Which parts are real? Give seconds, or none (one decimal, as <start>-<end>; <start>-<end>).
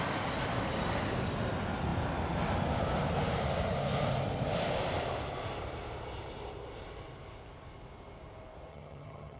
0.0-8.7